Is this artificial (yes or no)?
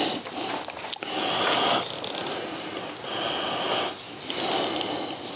no